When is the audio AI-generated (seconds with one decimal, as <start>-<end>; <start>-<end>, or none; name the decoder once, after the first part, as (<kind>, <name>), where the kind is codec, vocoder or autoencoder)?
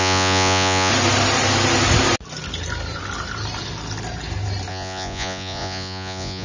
0.0-0.9 (vocoder, Vocos); 4.7-6.4